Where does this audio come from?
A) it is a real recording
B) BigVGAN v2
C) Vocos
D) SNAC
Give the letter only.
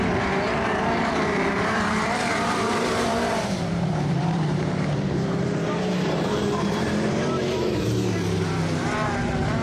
B